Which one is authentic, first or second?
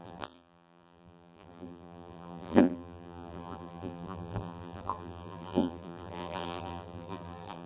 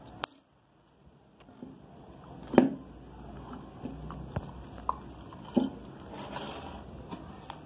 second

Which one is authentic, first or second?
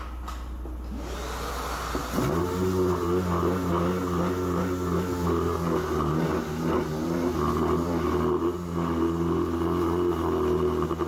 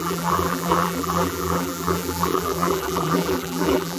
first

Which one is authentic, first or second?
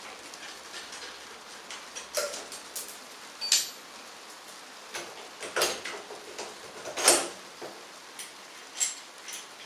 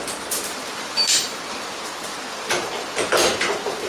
first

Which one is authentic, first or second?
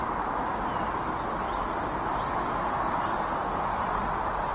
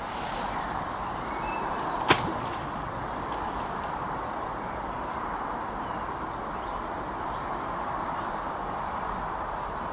first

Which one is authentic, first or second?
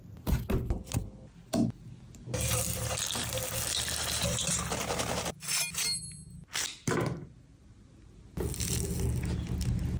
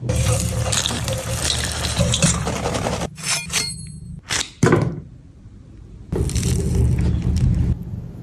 first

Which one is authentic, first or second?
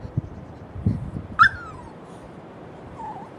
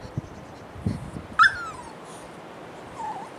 second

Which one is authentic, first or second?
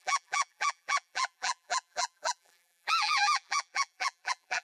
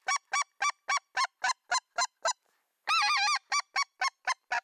second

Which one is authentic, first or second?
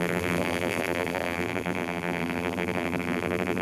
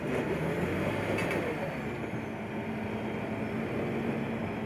second